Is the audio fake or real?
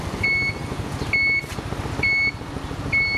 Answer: real